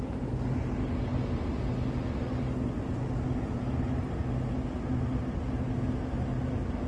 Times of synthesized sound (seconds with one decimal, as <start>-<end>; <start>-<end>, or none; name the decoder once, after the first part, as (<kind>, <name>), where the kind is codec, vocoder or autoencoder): none